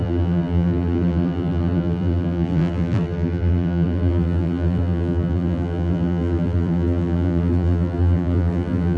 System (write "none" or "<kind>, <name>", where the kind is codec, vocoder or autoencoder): vocoder, BigVGAN v2